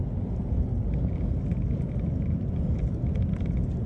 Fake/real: real